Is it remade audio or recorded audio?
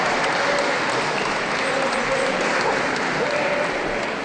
recorded